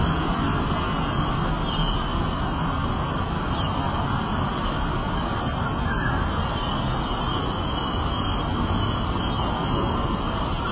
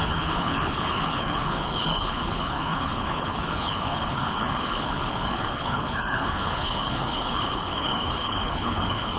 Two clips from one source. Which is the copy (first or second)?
second